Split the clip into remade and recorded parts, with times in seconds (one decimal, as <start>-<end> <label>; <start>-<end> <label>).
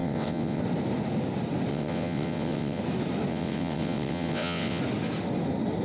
0.0-0.6 remade; 0.6-1.7 recorded; 1.7-2.8 remade; 2.8-3.3 recorded; 3.3-4.8 remade; 4.8-5.8 recorded